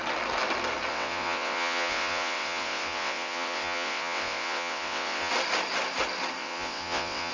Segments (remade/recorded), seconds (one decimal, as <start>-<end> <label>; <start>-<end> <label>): 0.0-0.9 recorded; 0.9-5.3 remade; 5.3-6.4 recorded; 6.4-7.3 remade